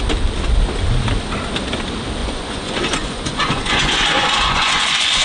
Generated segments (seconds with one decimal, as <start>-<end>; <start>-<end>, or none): 2.2-5.2